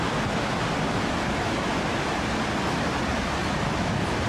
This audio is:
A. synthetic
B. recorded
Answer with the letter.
B